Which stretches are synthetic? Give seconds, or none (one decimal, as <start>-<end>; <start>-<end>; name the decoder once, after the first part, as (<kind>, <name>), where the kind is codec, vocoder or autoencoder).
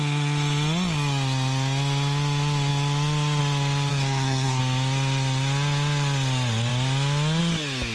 3.9-4.6 (codec, SNAC)